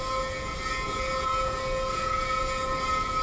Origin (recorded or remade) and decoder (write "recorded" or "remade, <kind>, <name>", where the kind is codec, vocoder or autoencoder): recorded